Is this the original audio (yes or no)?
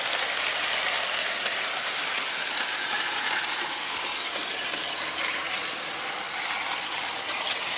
yes